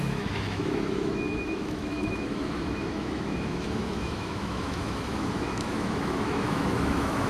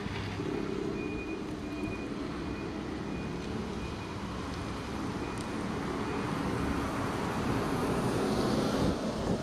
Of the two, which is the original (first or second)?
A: second